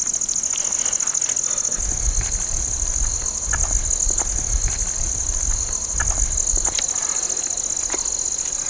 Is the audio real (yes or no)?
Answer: yes